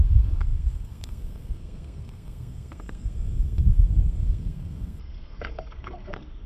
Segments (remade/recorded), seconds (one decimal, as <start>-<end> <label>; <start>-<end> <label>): 0.0-6.5 remade